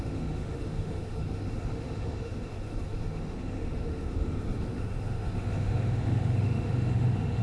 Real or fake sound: fake